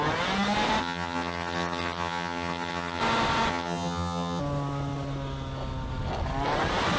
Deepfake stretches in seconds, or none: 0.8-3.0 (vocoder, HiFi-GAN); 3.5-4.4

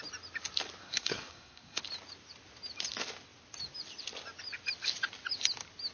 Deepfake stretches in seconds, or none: 0.8-1.8 (codec, SNAC)

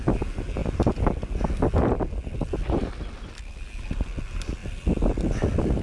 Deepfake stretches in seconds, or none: none

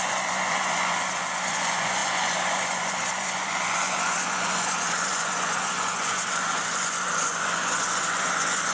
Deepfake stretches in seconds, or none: 0.0-8.7 (vocoder, Vocos)

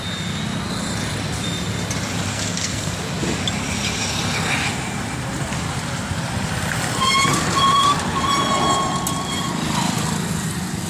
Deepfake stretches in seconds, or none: 2.3-2.9 (codec, SNAC)

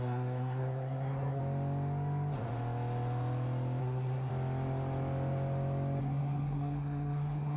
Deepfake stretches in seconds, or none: 0.0-1.4 (codec, SNAC); 3.8-4.3; 6.0-7.6